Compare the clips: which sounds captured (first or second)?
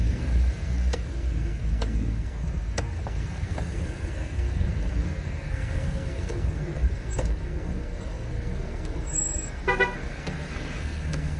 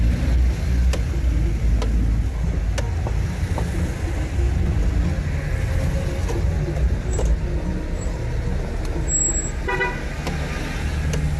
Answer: second